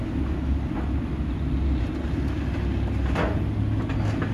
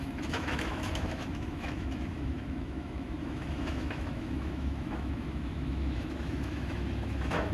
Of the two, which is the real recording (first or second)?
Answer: first